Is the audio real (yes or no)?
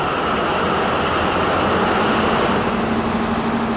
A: yes